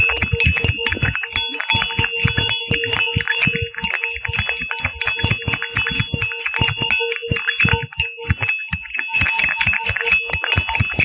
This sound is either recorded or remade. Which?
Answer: recorded